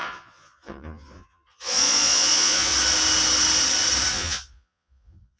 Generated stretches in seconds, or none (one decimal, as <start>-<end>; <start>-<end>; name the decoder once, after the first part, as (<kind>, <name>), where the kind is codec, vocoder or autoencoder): 0.0-2.7 (vocoder, Vocos); 4.1-5.4